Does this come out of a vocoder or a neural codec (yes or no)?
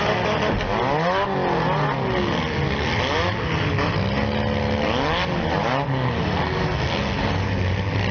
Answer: no